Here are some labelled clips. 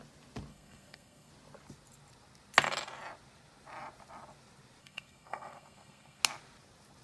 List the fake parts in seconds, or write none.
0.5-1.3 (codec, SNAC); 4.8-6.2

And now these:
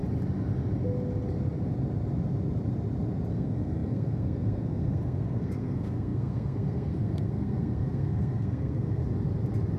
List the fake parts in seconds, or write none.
3.3-9.0 (codec, SNAC)

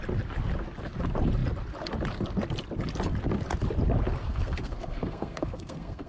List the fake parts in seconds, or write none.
4.2-6.1 (codec, SNAC)

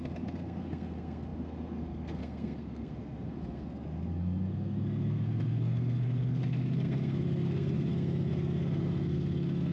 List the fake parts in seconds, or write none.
0.0-9.7 (codec, SNAC)

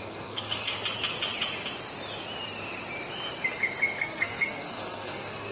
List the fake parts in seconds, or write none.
0.0-0.7 (codec, SNAC); 4.0-5.5